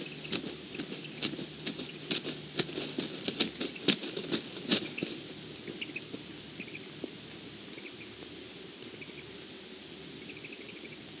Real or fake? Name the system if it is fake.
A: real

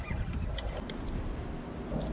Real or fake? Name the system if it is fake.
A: real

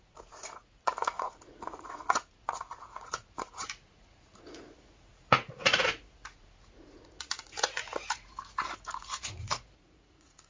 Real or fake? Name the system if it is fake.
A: fake, vocoder, Vocos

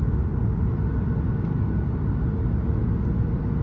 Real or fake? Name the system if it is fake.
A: real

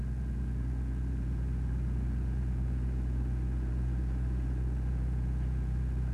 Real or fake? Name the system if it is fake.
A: fake, vocoder, Vocos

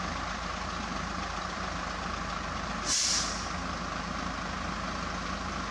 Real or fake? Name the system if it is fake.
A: real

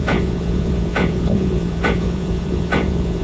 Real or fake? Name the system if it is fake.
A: fake, vocoder, Vocos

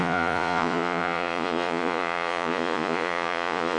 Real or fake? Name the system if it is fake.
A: fake, vocoder, Vocos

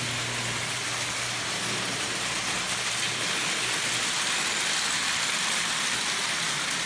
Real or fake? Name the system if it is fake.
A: real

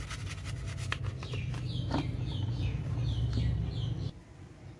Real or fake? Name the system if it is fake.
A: real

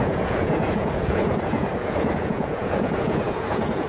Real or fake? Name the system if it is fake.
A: fake, vocoder, Vocos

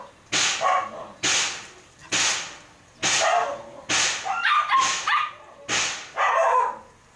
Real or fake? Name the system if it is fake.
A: real